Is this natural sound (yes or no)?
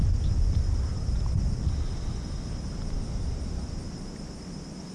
yes